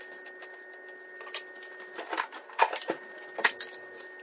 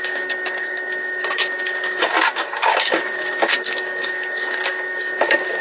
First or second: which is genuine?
first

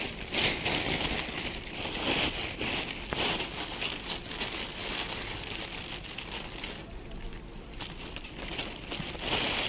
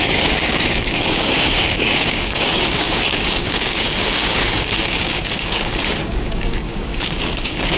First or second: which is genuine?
first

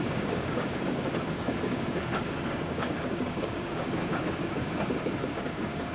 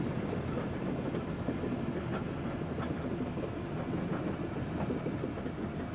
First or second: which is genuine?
second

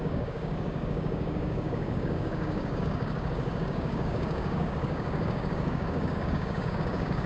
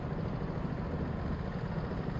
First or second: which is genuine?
second